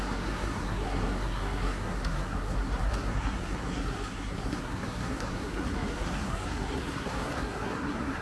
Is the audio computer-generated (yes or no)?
yes